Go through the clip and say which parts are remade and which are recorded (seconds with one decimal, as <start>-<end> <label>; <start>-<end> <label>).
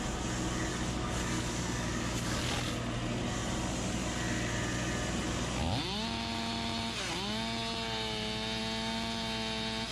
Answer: 0.0-0.7 recorded; 0.7-2.4 remade; 2.4-9.9 recorded